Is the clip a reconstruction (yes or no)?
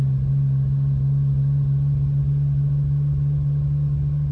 no